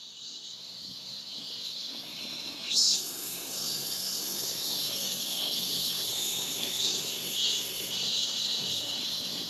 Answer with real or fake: fake